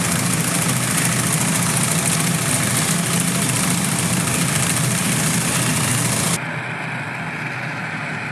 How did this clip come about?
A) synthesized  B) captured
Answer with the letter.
B